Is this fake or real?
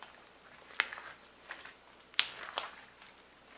real